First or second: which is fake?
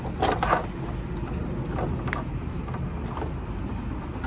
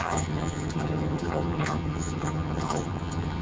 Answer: second